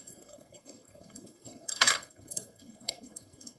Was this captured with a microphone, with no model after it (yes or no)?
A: no